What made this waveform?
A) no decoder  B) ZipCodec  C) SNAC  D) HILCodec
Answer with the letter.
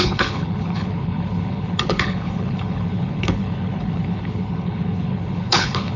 D